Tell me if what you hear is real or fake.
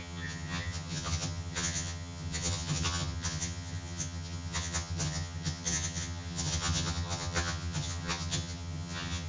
fake